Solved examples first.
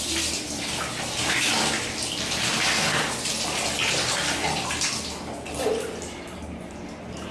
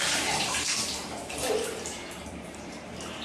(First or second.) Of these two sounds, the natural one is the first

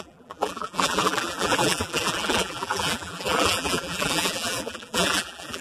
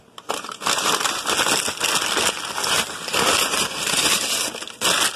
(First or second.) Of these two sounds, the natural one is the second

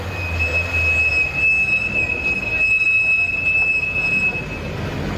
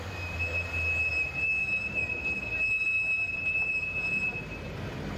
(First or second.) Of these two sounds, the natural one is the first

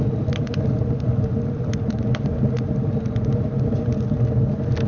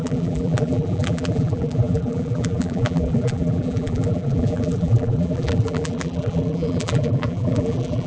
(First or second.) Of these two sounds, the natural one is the first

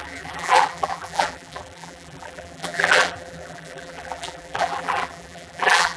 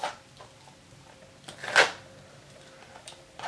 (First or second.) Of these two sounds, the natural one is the second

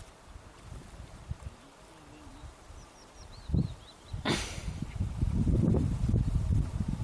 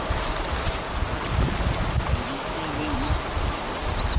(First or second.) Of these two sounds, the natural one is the second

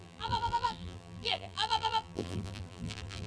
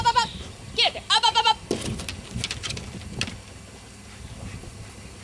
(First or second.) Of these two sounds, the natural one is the second